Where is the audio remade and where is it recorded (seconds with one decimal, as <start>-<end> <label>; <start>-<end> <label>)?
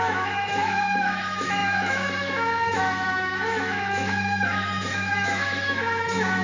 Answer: 0.0-6.4 remade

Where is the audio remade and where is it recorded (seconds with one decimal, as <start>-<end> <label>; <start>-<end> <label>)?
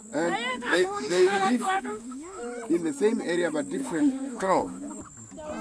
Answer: 0.0-0.5 recorded; 0.5-2.4 remade; 2.4-3.8 recorded; 3.8-4.9 remade; 4.9-5.6 recorded